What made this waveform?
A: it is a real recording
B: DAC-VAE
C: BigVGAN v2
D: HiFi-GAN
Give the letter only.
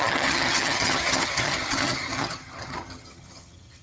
D